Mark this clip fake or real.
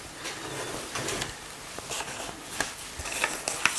real